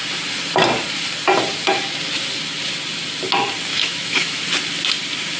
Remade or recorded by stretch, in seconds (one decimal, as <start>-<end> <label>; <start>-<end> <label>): 0.0-3.7 recorded; 3.7-4.4 remade; 4.4-5.4 recorded